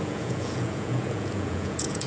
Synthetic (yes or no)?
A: yes